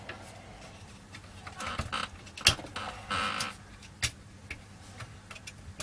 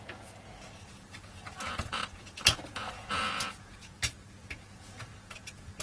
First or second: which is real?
first